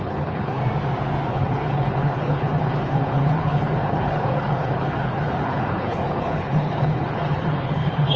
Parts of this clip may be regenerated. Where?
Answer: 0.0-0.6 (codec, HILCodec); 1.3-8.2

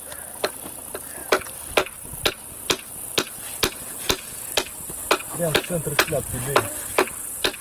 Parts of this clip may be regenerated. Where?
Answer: none